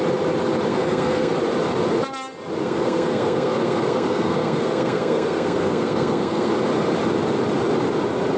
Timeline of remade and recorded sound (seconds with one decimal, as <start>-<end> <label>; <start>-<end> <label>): 0.0-0.7 recorded; 0.7-1.3 remade; 1.3-2.6 recorded; 2.6-6.5 remade; 6.5-8.4 recorded